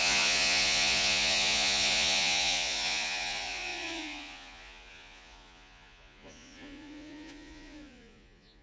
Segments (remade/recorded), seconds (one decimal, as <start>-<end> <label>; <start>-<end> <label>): 0.0-8.6 remade